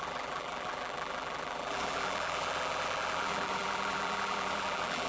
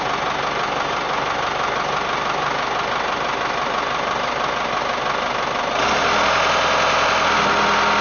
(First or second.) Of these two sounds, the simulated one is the first